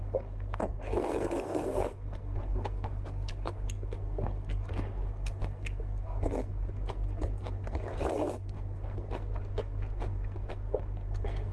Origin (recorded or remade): remade